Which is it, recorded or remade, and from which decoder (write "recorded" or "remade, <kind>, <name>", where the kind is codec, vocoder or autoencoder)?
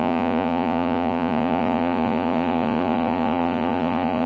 remade, vocoder, Vocos